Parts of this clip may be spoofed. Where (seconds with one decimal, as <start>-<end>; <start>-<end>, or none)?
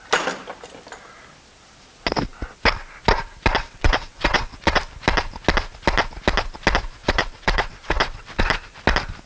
3.6-4.8; 7.0-8.4